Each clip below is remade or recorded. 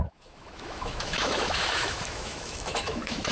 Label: remade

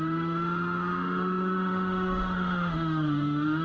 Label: remade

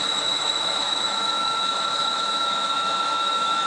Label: remade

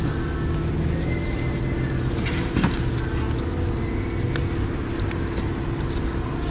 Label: recorded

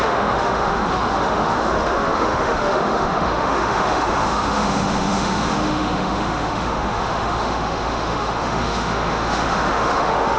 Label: remade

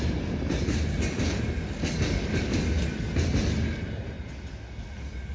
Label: recorded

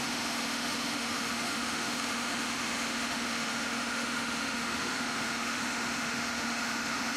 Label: remade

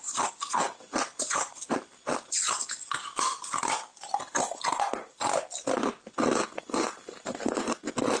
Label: recorded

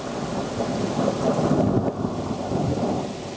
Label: recorded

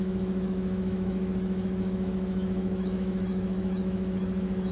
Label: remade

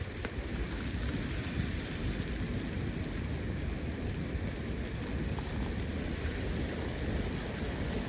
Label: recorded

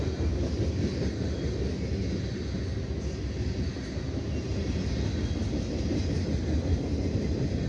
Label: recorded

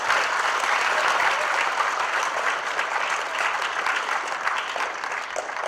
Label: recorded